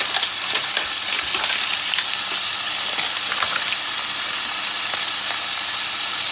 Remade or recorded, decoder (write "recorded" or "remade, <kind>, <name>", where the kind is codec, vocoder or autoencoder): recorded